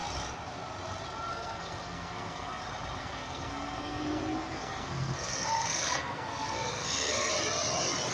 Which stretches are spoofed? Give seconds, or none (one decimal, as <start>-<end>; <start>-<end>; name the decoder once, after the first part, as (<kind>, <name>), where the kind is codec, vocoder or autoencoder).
1.3-2.6 (codec, SNAC); 3.0-7.3